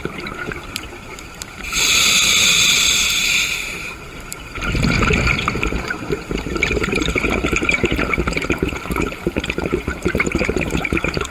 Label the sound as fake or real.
fake